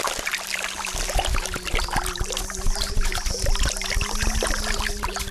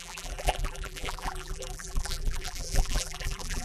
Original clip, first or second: first